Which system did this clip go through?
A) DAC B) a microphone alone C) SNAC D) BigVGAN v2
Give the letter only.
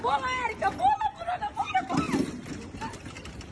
B